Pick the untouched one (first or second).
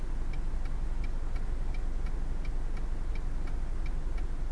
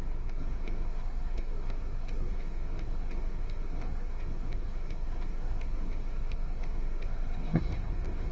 first